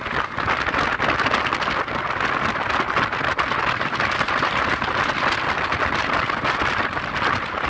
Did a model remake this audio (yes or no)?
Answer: no